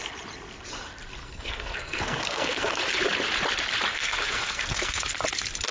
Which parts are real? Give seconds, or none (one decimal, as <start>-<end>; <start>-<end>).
0.0-1.2; 2.8-3.9; 5.0-5.7